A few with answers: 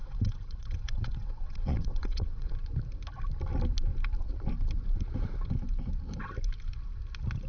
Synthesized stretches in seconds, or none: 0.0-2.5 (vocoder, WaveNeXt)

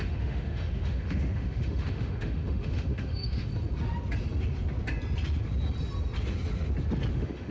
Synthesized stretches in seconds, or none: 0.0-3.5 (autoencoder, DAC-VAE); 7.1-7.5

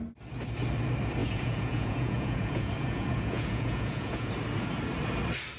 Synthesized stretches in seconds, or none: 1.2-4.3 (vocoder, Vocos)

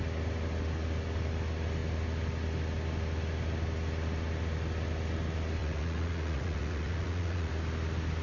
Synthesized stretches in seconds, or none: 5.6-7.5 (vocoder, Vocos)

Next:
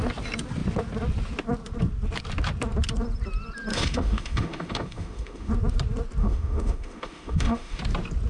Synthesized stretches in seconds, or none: 3.7-5.5 (autoencoder, DAC-VAE); 6.2-7.8